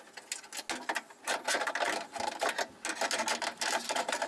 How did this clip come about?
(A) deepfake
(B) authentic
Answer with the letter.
B